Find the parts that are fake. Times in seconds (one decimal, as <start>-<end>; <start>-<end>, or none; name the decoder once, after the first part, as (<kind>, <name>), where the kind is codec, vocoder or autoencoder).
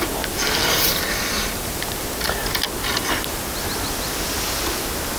none